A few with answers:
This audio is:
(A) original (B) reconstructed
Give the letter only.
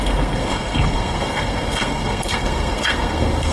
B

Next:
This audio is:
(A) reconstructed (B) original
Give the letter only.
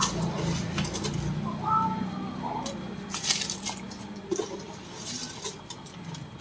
B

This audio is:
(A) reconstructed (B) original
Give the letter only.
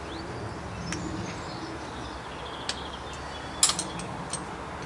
B